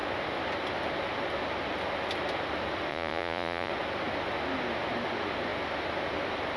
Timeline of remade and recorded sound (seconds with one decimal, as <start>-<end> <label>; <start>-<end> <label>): 0.0-2.9 recorded; 2.9-3.7 remade; 3.7-6.6 recorded